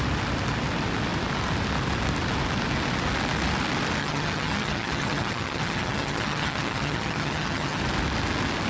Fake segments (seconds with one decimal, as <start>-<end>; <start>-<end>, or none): 4.0-7.8